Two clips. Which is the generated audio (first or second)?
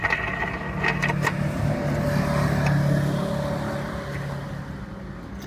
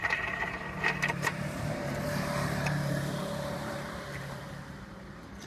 second